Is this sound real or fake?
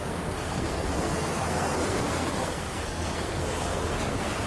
fake